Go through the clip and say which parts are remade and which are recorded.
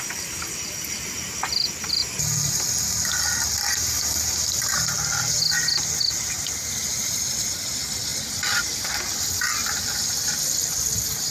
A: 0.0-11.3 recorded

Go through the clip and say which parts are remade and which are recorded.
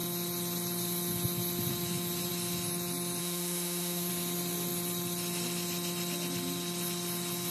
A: 0.0-3.2 recorded; 3.2-4.1 remade; 4.1-7.5 recorded